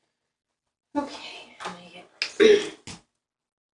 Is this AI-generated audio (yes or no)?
no